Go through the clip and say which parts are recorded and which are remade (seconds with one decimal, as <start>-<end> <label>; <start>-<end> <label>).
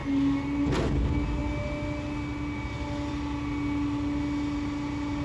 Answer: 0.0-5.2 recorded